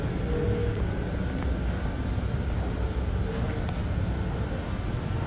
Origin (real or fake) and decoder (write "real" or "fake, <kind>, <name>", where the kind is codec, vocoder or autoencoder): real